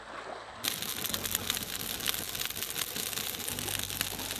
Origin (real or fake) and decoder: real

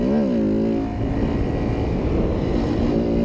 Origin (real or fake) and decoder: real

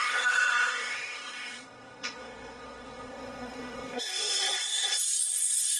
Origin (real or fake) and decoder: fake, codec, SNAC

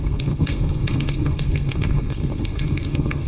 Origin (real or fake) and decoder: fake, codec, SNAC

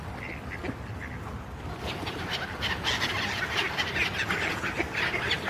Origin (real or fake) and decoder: real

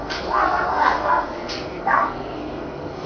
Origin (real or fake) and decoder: fake, codec, SNAC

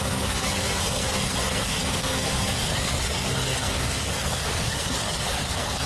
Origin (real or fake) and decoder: fake, codec, SNAC